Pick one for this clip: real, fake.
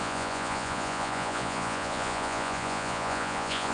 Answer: fake